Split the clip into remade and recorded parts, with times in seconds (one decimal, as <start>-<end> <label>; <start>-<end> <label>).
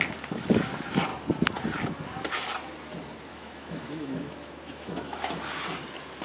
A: 0.0-3.3 recorded; 3.3-5.4 remade; 5.4-6.2 recorded